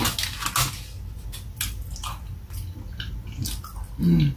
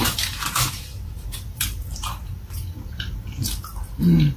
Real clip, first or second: first